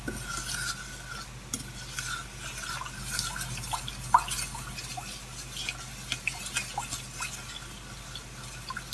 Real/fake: real